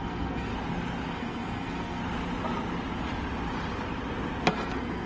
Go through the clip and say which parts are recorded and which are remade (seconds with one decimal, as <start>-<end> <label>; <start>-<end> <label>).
0.0-0.5 remade; 0.5-1.1 recorded; 1.1-2.0 remade; 2.0-4.5 recorded; 4.5-5.1 remade